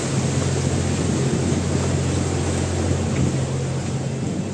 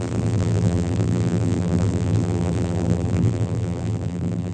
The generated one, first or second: second